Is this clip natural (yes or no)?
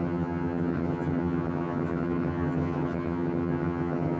no